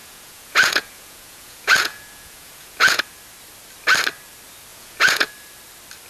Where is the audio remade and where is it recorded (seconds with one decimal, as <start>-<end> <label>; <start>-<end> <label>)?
0.0-3.0 remade; 3.0-4.7 recorded; 4.7-5.3 remade; 5.3-6.1 recorded